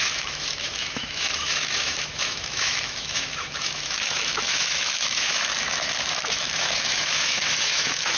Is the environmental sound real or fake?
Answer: fake